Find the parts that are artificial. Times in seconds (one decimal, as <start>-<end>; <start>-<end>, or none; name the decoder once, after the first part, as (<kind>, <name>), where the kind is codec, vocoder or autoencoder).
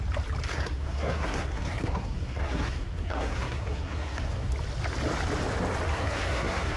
0.5-4.5 (codec, SNAC); 5.9-6.8